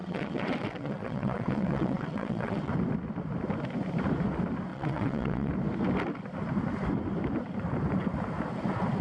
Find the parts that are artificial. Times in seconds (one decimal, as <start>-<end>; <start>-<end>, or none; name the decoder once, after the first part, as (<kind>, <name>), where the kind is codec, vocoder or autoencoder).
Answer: 0.0-2.7 (vocoder, WaveNeXt); 4.7-5.5